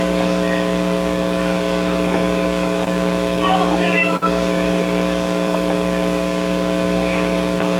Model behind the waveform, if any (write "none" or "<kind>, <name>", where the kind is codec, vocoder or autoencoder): codec, DAC